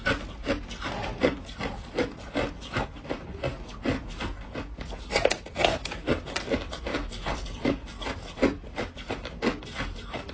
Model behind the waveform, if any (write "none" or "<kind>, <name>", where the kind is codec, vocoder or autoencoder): none